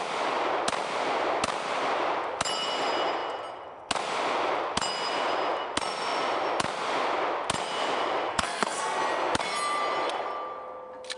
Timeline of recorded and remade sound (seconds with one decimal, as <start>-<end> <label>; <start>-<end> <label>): 0.0-8.3 recorded; 8.3-9.0 remade; 9.0-11.2 recorded